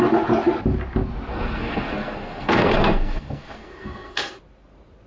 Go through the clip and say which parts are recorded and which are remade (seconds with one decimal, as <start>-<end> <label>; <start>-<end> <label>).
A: 0.0-1.3 recorded; 1.3-4.4 remade; 4.4-5.1 recorded